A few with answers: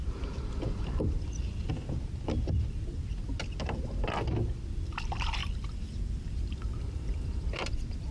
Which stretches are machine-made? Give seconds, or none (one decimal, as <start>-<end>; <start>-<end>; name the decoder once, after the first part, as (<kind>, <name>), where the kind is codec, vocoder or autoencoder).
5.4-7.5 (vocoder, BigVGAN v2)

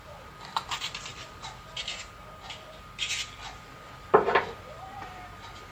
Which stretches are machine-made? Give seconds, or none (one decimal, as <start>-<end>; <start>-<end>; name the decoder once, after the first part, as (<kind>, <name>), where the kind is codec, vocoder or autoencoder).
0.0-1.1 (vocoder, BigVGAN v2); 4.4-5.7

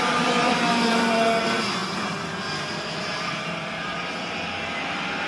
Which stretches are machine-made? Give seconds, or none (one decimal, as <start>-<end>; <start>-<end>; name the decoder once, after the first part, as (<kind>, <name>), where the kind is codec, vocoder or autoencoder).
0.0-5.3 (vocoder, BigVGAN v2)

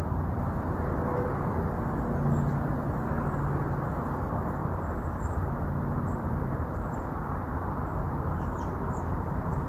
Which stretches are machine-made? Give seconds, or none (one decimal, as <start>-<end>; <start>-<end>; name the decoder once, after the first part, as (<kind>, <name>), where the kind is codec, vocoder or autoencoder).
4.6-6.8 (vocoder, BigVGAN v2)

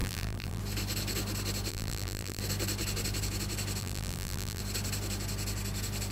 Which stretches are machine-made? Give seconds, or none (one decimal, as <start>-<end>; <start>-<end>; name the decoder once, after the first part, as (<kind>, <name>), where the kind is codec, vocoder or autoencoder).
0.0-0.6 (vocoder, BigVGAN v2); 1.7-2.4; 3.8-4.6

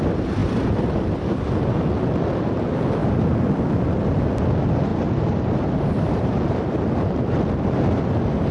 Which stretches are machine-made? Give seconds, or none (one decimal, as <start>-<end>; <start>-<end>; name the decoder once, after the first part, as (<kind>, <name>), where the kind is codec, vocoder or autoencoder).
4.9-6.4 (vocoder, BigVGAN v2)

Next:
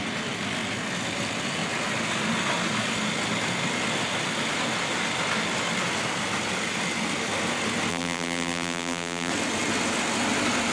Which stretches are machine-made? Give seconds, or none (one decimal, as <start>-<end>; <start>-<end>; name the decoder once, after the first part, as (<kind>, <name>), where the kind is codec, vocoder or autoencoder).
7.9-9.3 (vocoder, BigVGAN v2)